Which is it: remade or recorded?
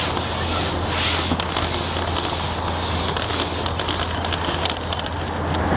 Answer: recorded